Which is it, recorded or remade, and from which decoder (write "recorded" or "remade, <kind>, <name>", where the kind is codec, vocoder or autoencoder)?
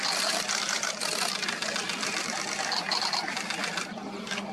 recorded